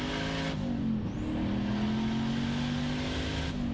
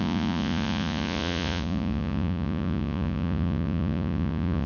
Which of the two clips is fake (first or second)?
second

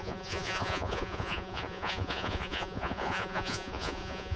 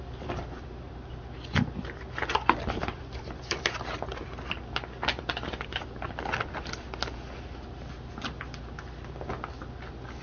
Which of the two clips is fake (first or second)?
first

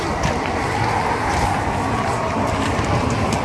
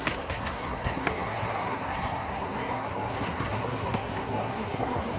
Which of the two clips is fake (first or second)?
second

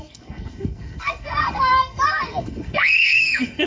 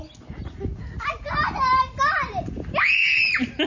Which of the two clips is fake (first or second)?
first